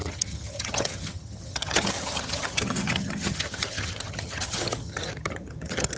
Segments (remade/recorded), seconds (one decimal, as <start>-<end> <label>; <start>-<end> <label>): 0.0-6.0 remade